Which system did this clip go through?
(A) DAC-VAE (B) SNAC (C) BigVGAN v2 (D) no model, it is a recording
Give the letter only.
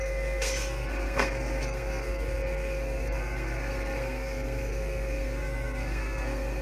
B